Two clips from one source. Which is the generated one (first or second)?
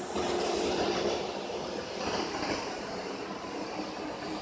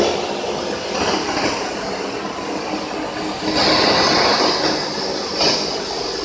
first